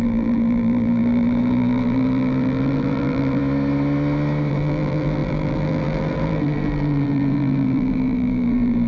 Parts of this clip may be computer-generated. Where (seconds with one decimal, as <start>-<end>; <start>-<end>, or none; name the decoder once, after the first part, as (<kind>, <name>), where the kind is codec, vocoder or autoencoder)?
0.0-3.4 (vocoder, BigVGAN v2); 4.5-8.9